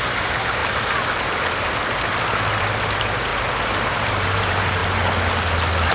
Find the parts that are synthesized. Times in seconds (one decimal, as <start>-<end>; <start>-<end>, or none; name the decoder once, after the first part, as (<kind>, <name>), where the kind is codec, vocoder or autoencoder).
0.0-0.6 (vocoder, BigVGAN v2); 2.6-3.3; 3.9-4.8